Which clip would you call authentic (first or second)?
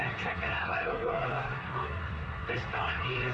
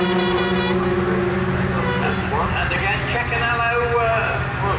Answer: second